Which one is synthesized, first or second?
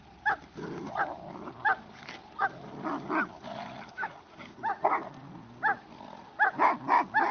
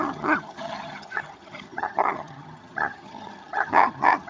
second